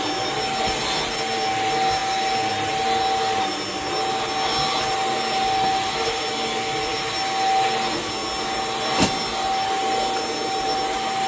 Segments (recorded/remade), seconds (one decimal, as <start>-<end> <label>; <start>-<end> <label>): 0.0-11.3 recorded

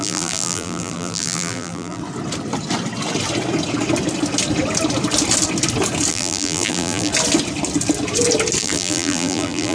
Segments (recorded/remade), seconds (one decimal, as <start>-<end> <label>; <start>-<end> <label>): 0.0-2.0 remade; 2.0-6.1 recorded; 6.1-7.1 remade; 7.1-8.6 recorded; 8.6-9.7 remade

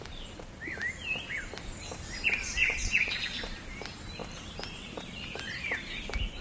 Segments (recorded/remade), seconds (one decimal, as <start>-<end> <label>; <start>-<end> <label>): 0.0-2.6 recorded; 2.6-3.2 remade; 3.2-6.4 recorded